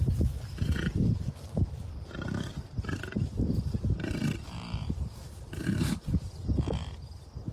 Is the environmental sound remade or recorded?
remade